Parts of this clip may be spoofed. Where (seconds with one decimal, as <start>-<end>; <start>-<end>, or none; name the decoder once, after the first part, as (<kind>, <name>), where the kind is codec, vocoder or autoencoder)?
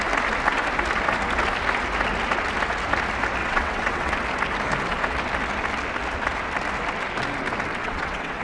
3.4-4.1 (vocoder, WaveNeXt); 7.8-8.4